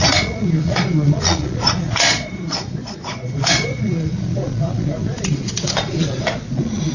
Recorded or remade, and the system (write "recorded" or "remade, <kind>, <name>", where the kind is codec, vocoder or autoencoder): remade, vocoder, Vocos